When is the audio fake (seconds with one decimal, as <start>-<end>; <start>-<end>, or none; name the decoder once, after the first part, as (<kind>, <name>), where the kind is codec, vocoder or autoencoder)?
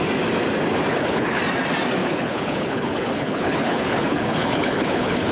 0.9-1.4 (codec, HILCodec); 2.0-5.3